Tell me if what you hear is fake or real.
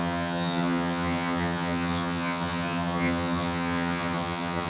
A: fake